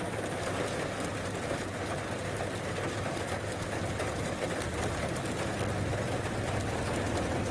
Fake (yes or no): no